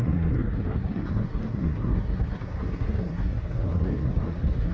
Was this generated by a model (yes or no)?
yes